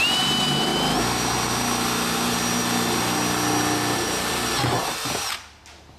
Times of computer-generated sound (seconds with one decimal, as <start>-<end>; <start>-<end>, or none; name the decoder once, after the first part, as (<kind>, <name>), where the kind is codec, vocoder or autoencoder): none